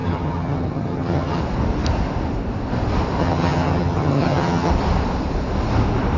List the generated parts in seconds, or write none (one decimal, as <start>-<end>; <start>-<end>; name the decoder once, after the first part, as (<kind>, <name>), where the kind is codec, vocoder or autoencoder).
0.0-1.4 (vocoder, HiFi-GAN); 3.2-4.7